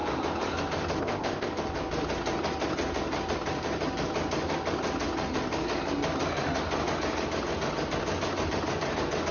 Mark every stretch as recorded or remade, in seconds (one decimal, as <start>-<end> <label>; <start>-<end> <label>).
0.0-1.0 recorded; 1.0-1.5 remade; 1.5-9.3 recorded